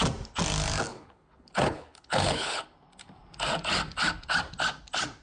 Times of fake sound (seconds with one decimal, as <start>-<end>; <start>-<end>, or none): 0.9-2.6